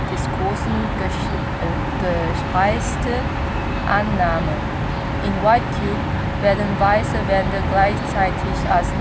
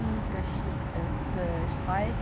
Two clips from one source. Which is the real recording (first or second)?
first